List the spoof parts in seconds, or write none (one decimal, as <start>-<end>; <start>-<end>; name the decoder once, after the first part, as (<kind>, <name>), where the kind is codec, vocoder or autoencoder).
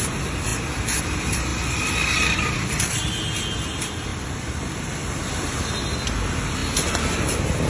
1.5-3.1 (vocoder, BigVGAN v2); 4.1-5.2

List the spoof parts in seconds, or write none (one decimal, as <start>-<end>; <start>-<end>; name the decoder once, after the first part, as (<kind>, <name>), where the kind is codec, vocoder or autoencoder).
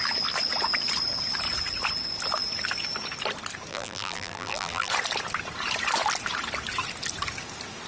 3.7-4.9 (vocoder, BigVGAN v2)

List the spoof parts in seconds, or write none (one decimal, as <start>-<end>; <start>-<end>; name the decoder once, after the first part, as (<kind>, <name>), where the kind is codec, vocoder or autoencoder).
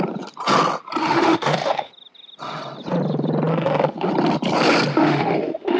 1.0-1.9 (autoencoder, DAC-VAE); 3.5-4.1; 4.9-5.8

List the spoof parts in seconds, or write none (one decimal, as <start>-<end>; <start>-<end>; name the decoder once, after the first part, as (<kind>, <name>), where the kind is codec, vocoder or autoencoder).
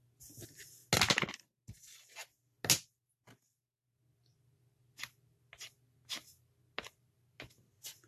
none